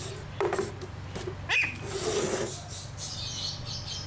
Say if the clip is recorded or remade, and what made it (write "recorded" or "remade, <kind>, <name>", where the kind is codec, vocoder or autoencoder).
recorded